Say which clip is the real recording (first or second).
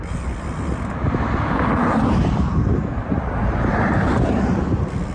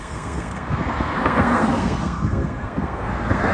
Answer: first